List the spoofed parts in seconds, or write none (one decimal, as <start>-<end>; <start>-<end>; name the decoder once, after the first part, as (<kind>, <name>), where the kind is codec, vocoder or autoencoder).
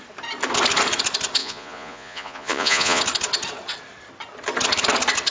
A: 1.4-3.0 (vocoder, Vocos)